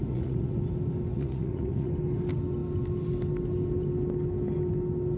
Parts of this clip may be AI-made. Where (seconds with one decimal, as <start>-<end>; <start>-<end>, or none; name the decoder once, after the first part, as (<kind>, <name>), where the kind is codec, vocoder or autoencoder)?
0.0-0.6 (vocoder, Vocos); 1.1-1.9